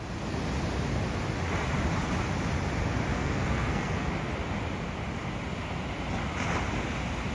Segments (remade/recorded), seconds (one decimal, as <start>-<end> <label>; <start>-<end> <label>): 0.0-3.1 recorded; 3.1-4.1 remade; 4.1-7.3 recorded